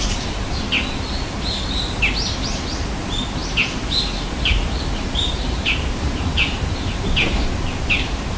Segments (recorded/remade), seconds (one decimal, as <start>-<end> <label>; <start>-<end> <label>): 0.0-0.7 remade; 0.7-3.0 recorded; 3.0-8.4 remade